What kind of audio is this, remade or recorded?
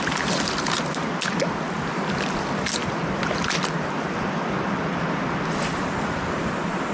recorded